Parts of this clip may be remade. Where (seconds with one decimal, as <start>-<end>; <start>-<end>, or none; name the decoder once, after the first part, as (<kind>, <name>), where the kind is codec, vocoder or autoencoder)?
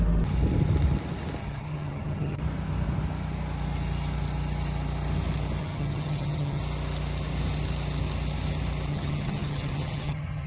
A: 1.4-2.4 (vocoder, HiFi-GAN); 5.6-6.6; 8.9-10.5